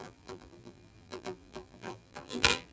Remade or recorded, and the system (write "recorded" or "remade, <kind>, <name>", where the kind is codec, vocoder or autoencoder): remade, vocoder, BigVGAN v2